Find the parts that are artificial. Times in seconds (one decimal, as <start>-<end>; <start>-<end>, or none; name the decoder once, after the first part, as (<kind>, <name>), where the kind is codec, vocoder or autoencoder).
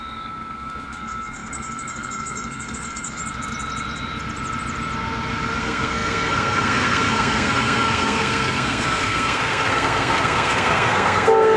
0.0-3.2 (codec, SNAC); 5.6-11.6